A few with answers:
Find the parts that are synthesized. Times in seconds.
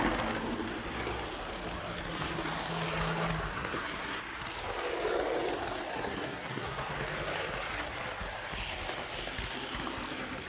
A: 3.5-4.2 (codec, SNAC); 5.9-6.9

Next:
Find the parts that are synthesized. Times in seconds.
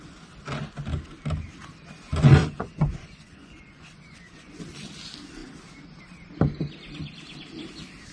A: 2.4-4.6 (vocoder, Vocos)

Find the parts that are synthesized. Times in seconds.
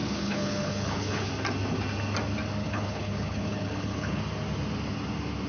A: 0.0-1.3 (codec, HILCodec); 2.6-4.2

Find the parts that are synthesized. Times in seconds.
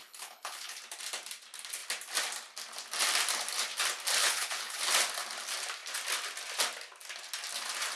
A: 0.0-0.8 (codec, HILCodec); 4.2-4.8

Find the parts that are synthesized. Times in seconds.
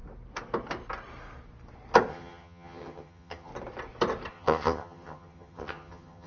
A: 2.1-3.5 (vocoder, HiFi-GAN); 4.3-6.3